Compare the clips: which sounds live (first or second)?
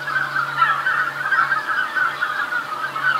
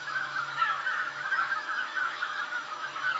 first